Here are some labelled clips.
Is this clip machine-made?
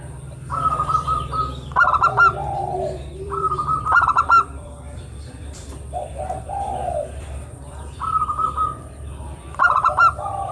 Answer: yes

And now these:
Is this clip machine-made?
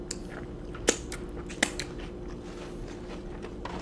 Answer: no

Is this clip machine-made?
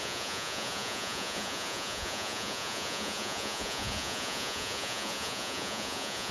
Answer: yes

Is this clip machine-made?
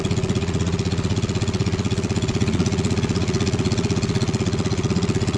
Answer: yes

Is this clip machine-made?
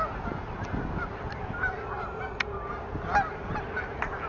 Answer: no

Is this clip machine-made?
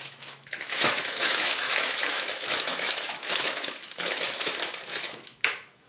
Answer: yes